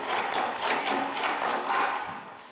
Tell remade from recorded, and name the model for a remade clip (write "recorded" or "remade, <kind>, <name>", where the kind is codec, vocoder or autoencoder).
remade, codec, DAC